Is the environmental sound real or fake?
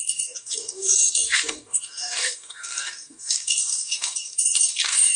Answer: fake